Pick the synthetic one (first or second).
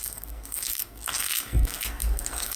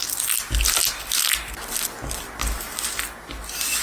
first